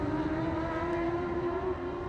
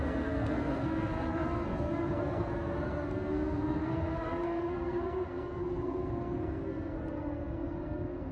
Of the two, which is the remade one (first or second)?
second